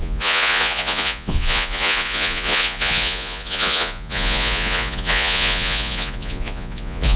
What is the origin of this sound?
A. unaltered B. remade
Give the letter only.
B